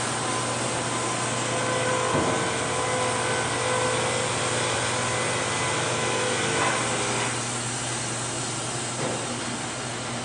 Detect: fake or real real